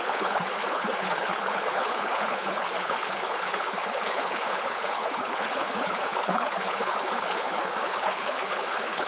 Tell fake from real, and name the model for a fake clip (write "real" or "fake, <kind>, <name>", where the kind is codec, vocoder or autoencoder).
fake, codec, HILCodec